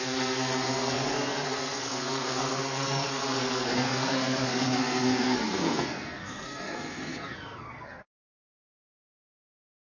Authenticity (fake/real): fake